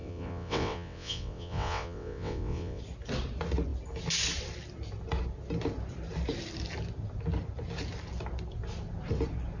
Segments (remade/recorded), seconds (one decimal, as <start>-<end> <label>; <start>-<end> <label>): 0.0-2.8 remade; 2.8-9.6 recorded